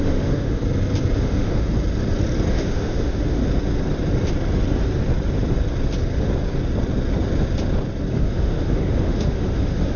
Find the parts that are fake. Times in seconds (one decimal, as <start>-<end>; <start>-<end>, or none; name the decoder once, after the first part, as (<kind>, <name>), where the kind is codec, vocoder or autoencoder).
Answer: 0.0-0.6 (autoencoder, DAC-VAE); 1.2-1.7; 2.5-3.4; 8.1-10.0